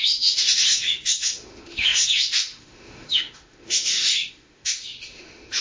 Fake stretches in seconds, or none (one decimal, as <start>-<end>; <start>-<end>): 0.0-5.6